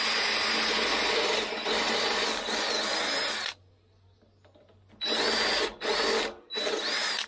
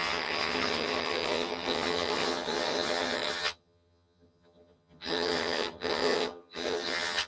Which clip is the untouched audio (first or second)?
first